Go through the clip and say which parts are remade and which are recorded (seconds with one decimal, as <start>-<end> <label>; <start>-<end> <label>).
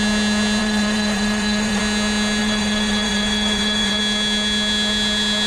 0.0-0.6 recorded; 0.6-1.8 remade; 1.8-2.4 recorded; 2.4-4.0 remade; 4.0-5.5 recorded